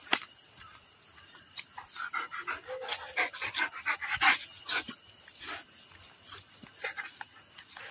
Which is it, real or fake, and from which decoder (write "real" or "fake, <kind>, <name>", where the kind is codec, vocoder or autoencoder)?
real